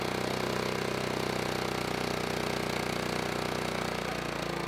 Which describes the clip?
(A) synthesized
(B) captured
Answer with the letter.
B